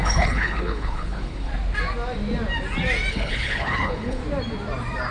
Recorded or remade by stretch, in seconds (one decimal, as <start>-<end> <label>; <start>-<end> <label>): 0.0-1.5 remade; 1.5-3.1 recorded; 3.1-4.2 remade; 4.2-5.1 recorded